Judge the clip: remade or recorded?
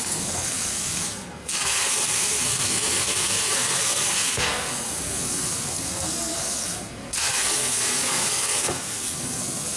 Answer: remade